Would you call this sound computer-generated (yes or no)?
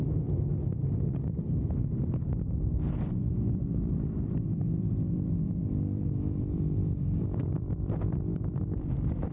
yes